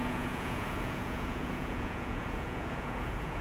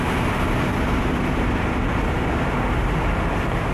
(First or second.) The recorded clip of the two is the second